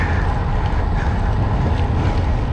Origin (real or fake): real